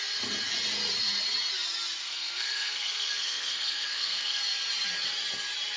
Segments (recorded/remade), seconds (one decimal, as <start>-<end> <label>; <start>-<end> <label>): 0.0-2.0 recorded; 2.0-4.4 remade; 4.4-5.8 recorded